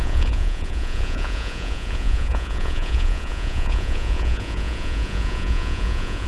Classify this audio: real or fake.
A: fake